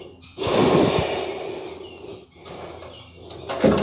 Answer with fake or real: real